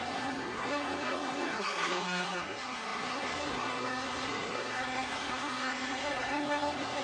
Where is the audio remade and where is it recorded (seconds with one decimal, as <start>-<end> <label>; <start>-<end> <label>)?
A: 0.0-7.0 remade